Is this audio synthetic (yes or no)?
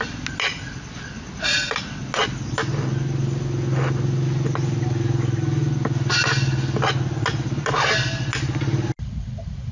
no